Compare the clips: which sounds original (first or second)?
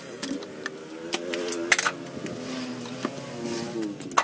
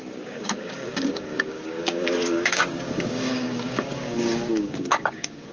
first